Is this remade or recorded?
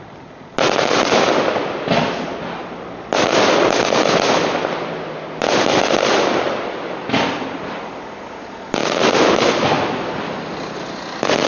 recorded